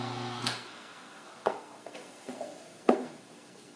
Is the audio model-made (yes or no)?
yes